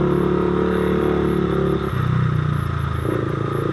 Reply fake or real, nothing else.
real